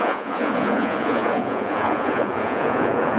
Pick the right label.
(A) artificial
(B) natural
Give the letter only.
A